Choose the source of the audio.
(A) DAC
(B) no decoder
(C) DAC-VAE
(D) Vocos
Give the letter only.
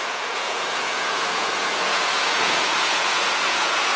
D